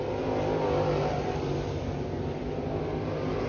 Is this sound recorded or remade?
recorded